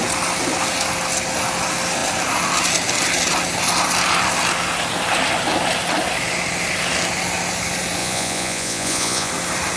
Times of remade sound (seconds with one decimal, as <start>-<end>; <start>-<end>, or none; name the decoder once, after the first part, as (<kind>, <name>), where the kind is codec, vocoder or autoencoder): 8.0-9.3 (vocoder, Vocos)